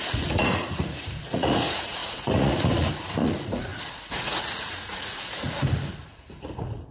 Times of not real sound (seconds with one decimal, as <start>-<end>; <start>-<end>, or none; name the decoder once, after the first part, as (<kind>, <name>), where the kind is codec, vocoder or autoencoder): 0.0-6.9 (vocoder, Vocos)